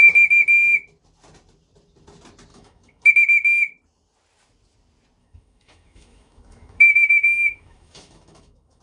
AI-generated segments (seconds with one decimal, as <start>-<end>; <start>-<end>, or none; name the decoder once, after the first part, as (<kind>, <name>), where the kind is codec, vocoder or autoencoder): 2.5-3.1 (autoencoder, DAC-VAE); 5.2-8.8